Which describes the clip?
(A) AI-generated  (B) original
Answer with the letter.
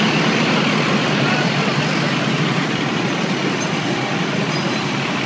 B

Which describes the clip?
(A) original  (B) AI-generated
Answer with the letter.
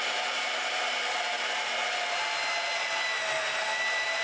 A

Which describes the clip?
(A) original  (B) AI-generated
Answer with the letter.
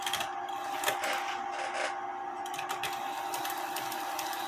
B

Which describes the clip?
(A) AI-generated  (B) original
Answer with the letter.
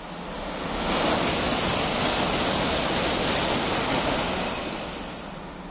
B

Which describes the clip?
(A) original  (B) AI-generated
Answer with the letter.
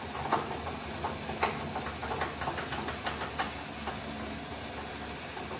A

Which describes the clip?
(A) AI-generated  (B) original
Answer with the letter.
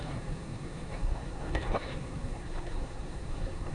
A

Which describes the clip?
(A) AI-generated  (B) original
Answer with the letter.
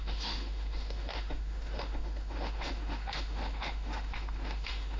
A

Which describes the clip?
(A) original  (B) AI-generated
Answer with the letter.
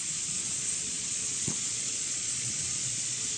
B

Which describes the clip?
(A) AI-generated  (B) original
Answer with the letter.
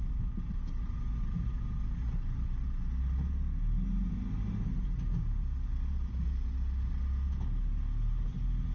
B